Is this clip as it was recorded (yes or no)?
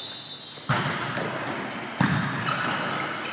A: yes